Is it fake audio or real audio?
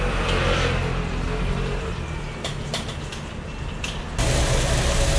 real